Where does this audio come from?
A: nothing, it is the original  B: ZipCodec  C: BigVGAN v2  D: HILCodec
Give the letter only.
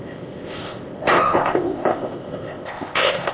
B